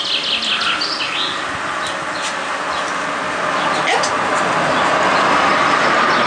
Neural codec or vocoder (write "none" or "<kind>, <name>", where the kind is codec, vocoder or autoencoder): none